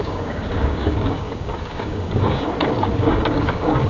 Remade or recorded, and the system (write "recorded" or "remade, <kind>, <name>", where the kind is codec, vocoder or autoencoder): remade, codec, DAC